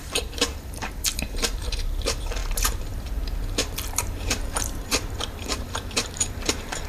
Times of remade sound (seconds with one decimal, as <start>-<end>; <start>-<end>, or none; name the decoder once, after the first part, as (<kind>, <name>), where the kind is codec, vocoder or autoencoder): 0.0-6.9 (vocoder, BigVGAN v2)